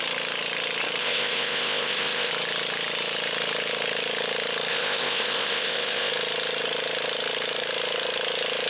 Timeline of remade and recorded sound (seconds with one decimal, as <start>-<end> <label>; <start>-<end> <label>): 0.0-1.0 recorded; 1.0-2.3 remade; 2.3-4.7 recorded; 4.7-6.1 remade; 6.1-8.7 recorded